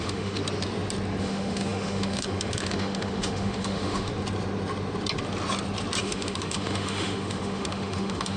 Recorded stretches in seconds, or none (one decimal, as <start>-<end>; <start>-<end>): 0.4-1.2; 4.1-6.0